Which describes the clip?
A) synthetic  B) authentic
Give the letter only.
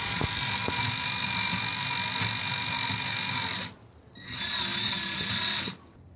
B